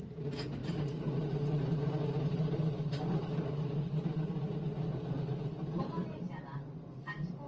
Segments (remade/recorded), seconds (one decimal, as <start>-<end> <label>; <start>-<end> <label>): 0.0-0.6 recorded; 0.6-4.3 remade; 4.3-4.9 recorded; 4.9-6.2 remade; 6.2-7.5 recorded